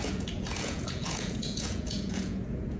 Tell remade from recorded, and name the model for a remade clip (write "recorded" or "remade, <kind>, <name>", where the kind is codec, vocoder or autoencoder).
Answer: remade, vocoder, Vocos